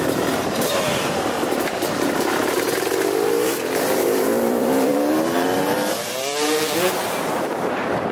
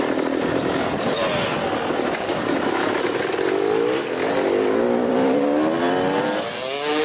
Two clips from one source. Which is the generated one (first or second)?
first